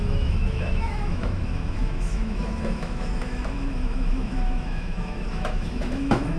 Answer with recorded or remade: remade